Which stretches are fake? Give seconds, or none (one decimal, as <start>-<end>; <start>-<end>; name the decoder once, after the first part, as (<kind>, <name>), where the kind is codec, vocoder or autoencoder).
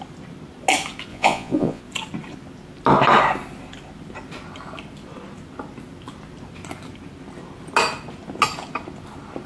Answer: 1.1-1.8 (vocoder, Vocos)